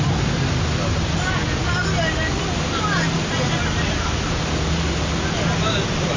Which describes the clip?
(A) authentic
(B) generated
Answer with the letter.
A